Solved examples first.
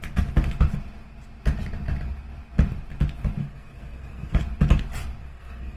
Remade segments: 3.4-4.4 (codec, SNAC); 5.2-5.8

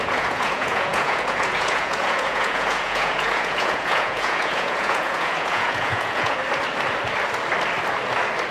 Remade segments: 0.0-6.4 (vocoder, Vocos)

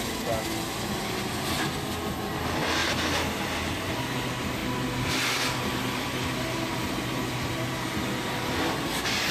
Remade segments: none

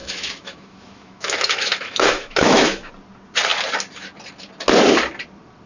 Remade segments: 0.0-2.9 (autoencoder, DAC-VAE)

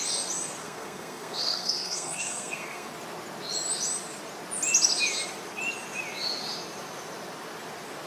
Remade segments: 0.6-2.9 (codec, SNAC)

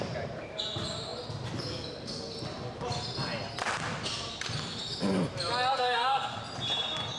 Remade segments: 5.7-6.4 (codec, SNAC)